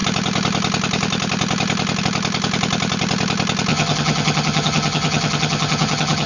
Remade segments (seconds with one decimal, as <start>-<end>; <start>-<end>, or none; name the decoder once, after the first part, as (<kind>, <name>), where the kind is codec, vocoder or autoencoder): 3.7-6.3 (vocoder, HiFi-GAN)